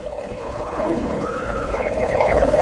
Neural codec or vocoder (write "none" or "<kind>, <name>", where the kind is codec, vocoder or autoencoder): codec, HILCodec